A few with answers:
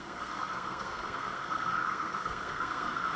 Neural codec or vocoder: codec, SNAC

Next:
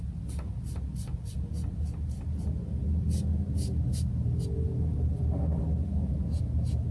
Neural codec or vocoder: none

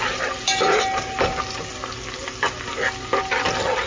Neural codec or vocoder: none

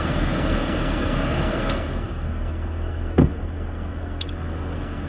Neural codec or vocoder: codec, SNAC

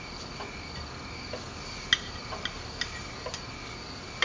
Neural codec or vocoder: none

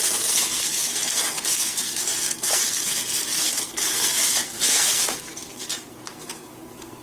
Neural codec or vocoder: codec, SNAC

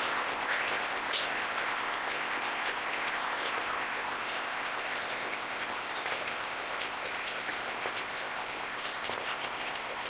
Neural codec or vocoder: codec, ZipCodec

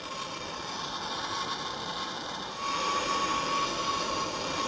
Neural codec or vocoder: none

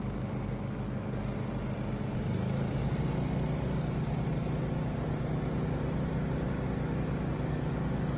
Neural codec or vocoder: none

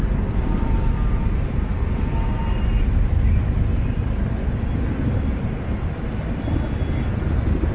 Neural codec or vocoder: vocoder, BigVGAN v2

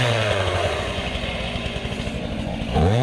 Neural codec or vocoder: vocoder, Vocos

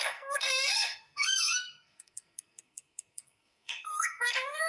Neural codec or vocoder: codec, SNAC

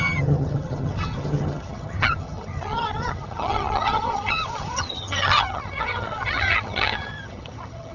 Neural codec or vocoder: vocoder, HiFi-GAN